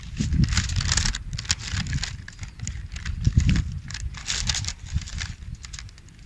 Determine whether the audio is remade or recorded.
recorded